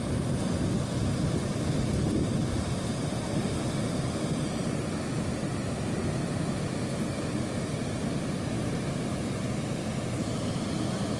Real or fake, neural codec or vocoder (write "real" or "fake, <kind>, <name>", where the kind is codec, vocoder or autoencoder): real